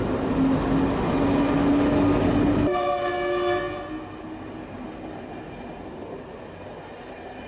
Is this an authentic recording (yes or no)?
yes